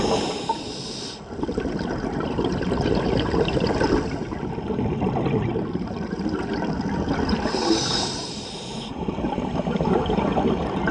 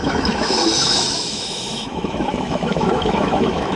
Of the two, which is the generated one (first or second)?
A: second